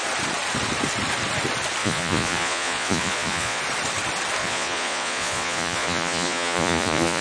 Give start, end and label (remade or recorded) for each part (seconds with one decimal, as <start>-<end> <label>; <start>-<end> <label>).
0.0-1.8 recorded; 1.8-3.6 remade; 3.6-4.4 recorded; 4.4-7.2 remade